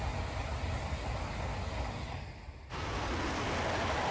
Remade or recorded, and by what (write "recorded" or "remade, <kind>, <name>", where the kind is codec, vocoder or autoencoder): recorded